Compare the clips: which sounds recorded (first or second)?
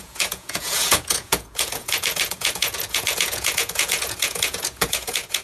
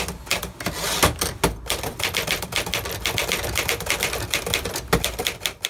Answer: second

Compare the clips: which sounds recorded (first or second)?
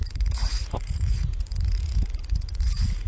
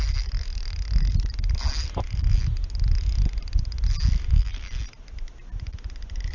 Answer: second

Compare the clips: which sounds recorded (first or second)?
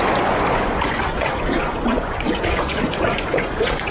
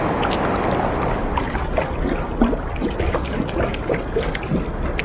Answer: second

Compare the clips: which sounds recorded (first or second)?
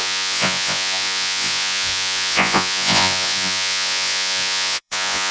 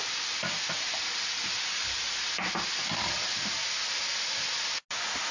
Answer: second